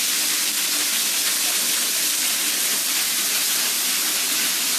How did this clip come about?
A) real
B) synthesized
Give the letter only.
A